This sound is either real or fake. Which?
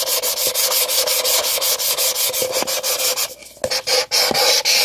real